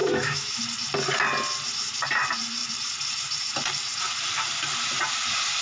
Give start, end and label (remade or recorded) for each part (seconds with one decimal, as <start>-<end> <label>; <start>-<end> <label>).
0.0-0.6 remade; 0.6-5.6 recorded